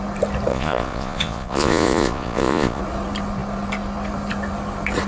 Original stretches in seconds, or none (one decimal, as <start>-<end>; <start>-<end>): 0.0-0.5; 2.8-5.1